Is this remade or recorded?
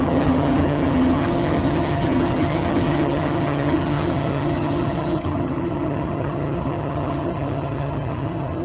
remade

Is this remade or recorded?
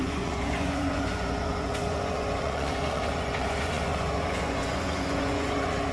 remade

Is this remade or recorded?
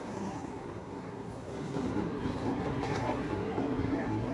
remade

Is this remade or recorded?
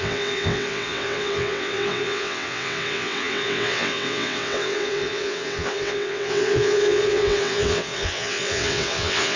remade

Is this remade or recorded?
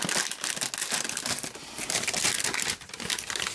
recorded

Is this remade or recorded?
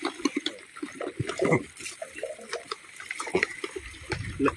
recorded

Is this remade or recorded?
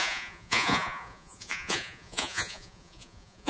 remade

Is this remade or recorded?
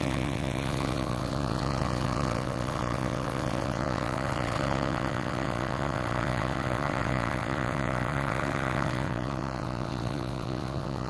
remade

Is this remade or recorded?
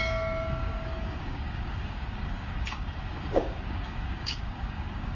remade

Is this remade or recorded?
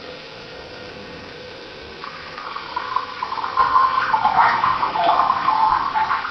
remade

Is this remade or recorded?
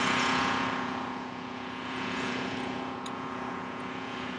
remade